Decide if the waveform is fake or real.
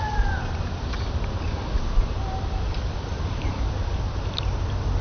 real